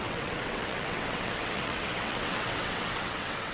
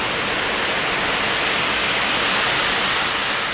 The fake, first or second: first